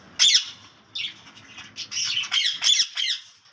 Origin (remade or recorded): recorded